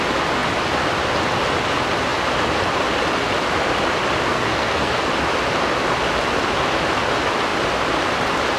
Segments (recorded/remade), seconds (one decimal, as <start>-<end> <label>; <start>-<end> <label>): 0.0-4.3 recorded; 4.3-4.9 remade; 4.9-8.6 recorded